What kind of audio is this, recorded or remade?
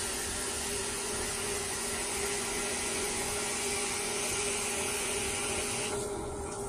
remade